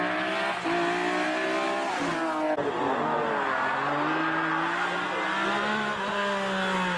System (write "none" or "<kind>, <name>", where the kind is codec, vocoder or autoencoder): none